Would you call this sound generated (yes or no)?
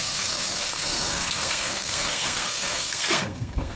yes